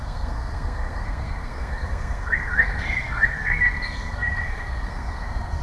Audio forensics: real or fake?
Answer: fake